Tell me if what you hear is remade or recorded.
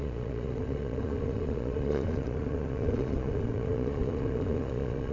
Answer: remade